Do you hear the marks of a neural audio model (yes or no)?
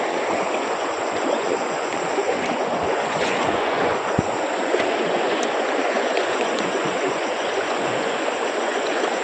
yes